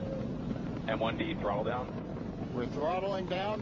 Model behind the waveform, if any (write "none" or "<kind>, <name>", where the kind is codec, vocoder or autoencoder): vocoder, BigVGAN v2